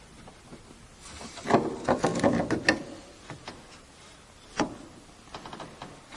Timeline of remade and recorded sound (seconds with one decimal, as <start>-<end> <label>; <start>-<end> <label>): 0.0-6.2 recorded